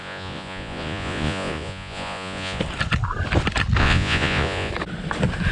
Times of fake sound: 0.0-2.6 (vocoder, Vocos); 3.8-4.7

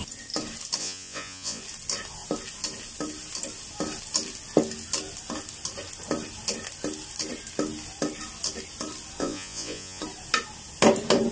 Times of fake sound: 0.8-1.6 (vocoder, Vocos); 9.2-10.0

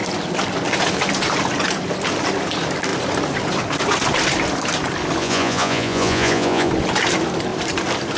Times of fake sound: 5.2-6.7 (vocoder, Vocos)

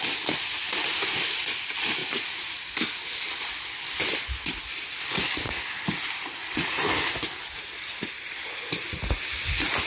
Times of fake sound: 2.0-2.6 (vocoder, Vocos); 6.4-6.9

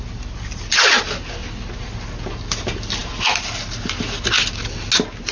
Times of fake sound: none

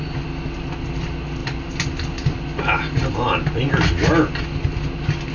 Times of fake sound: none